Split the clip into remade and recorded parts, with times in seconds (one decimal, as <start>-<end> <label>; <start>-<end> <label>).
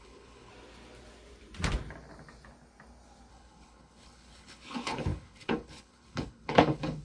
0.0-0.5 remade; 0.5-3.3 recorded; 3.3-7.0 remade